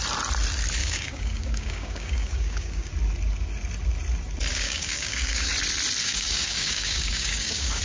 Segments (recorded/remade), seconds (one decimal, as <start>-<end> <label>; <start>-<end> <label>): 0.0-0.8 recorded; 0.8-2.9 remade; 2.9-4.5 recorded; 4.5-5.5 remade; 5.5-6.0 recorded; 6.0-7.8 remade